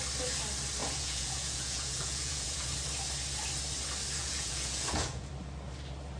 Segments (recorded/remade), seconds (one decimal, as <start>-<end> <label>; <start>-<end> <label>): 0.0-0.8 recorded; 0.8-2.7 remade; 2.7-4.2 recorded; 4.2-5.3 remade; 5.3-6.2 recorded